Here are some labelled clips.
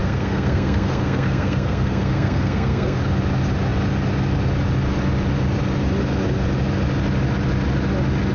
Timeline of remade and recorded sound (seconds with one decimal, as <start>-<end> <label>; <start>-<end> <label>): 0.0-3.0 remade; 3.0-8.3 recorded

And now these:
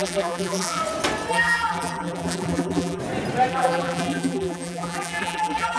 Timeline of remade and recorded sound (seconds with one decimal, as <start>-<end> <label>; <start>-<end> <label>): 0.0-0.8 remade; 0.8-1.3 recorded; 1.3-3.0 remade; 3.0-3.5 recorded; 3.5-5.8 remade

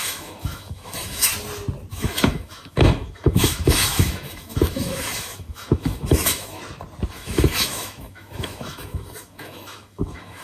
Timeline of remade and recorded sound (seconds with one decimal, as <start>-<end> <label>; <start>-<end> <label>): 0.0-1.3 remade; 1.3-1.9 recorded; 1.9-6.6 remade; 6.6-7.1 recorded; 7.1-10.4 remade

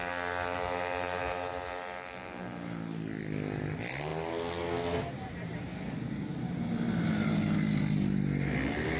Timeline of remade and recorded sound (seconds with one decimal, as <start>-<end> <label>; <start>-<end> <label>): 0.0-9.0 recorded

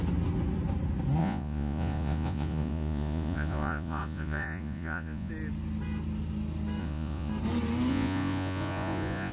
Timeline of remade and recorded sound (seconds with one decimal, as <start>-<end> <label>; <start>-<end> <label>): 0.0-1.2 recorded; 1.2-5.3 remade; 5.3-6.8 recorded; 6.8-7.3 remade; 7.3-7.9 recorded; 7.9-9.3 remade

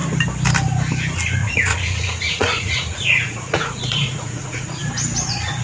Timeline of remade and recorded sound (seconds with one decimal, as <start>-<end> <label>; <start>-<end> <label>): 0.0-1.4 recorded; 1.4-4.8 remade; 4.8-5.6 recorded

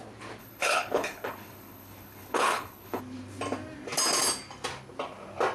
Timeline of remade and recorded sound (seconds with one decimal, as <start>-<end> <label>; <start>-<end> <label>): 0.0-0.4 recorded; 0.4-3.0 remade; 3.0-5.5 recorded

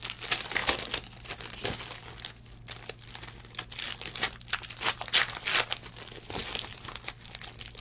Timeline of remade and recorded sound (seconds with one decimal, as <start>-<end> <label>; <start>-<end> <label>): 0.0-7.8 recorded